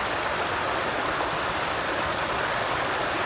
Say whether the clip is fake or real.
real